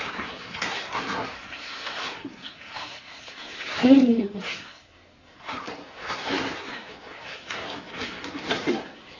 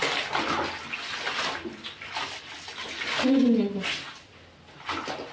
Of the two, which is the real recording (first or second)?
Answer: second